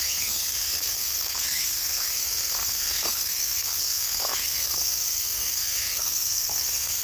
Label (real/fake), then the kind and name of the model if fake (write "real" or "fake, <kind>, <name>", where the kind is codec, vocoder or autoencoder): fake, codec, SNAC